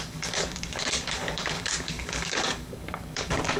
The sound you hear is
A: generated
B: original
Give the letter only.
A